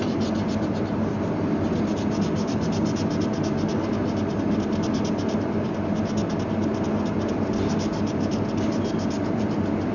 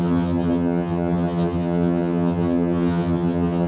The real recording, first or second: first